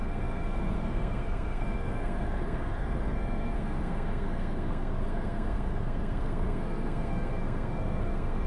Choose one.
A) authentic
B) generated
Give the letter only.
B